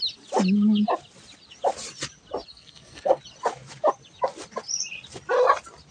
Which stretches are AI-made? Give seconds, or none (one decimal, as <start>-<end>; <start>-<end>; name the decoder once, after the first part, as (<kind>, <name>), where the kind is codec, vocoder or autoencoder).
2.5-3.2 (codec, SNAC)